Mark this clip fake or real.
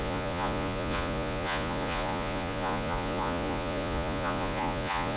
fake